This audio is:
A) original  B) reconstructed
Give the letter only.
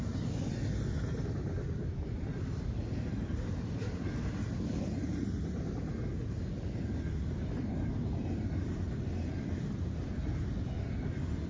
A